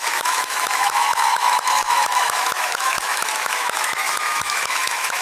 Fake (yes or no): yes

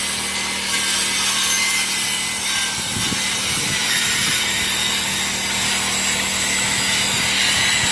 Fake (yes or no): no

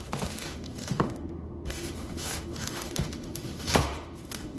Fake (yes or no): yes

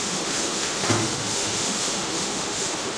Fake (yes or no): yes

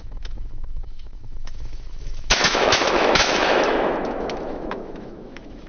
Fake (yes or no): yes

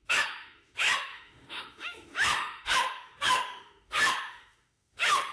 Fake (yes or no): yes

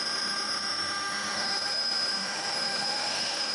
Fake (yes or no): yes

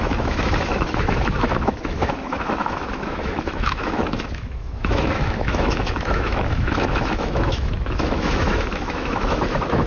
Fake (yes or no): yes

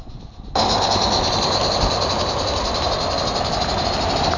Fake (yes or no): no